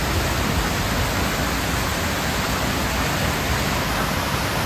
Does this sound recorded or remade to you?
recorded